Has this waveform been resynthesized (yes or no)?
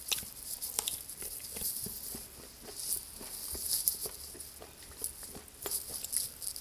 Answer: no